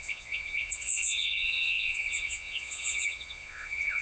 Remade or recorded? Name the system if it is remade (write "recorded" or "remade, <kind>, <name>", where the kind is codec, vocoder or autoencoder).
remade, vocoder, Vocos